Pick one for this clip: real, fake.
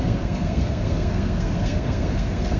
fake